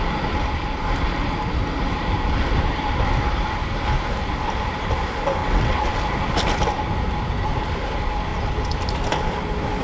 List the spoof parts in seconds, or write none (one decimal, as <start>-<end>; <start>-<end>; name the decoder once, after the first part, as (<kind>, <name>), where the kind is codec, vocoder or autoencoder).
5.4-5.9 (vocoder, WaveNeXt)